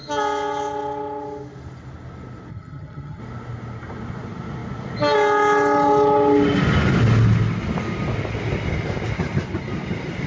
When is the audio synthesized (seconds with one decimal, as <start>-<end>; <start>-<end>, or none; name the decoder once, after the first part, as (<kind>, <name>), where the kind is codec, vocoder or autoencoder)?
2.5-3.2 (vocoder, HiFi-GAN)

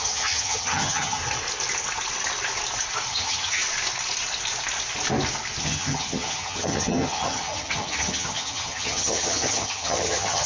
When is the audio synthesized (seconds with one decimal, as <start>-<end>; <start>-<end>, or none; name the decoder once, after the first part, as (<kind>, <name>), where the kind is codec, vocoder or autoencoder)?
0.0-1.2 (vocoder, HiFi-GAN); 3.1-3.6; 5.6-10.5

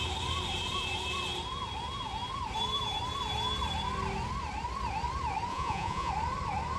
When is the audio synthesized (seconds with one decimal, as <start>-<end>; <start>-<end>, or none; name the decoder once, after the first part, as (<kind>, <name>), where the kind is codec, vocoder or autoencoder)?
5.5-6.1 (vocoder, Vocos)

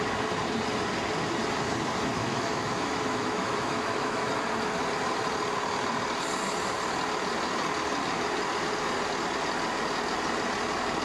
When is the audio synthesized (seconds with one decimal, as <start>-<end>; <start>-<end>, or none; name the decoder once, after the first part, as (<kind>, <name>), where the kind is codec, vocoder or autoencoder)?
2.1-4.3 (autoencoder, DAC-VAE)